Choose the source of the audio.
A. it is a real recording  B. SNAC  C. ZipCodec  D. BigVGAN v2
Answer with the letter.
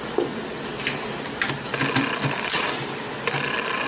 A